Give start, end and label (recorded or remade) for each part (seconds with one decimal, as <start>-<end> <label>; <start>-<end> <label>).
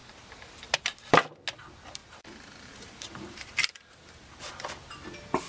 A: 0.0-2.0 recorded; 2.0-4.5 remade; 4.5-5.5 recorded